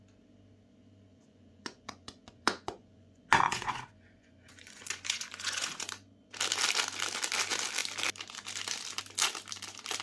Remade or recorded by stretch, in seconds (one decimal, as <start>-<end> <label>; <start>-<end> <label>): 0.0-1.1 recorded; 1.1-5.9 remade; 5.9-10.0 recorded